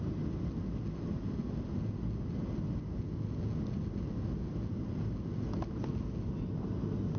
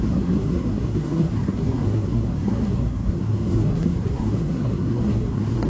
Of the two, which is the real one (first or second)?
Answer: first